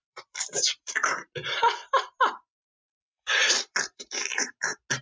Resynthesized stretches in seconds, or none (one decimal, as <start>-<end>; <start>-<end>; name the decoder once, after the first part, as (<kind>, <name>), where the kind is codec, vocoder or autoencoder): 0.0-0.9 (vocoder, BigVGAN v2); 1.4-2.0; 2.8-4.4